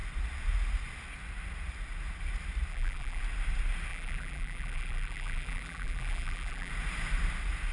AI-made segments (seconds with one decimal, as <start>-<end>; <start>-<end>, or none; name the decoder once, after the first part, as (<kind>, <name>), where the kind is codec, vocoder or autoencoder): 2.7-3.2 (vocoder, BigVGAN v2); 3.9-6.7